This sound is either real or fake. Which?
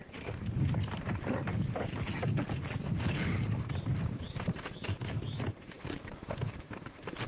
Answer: fake